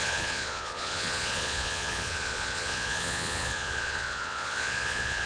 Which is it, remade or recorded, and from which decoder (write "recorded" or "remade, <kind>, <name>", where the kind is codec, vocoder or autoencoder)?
remade, vocoder, Vocos